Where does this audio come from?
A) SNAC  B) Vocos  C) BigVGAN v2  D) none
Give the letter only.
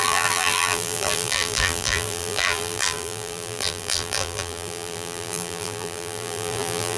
C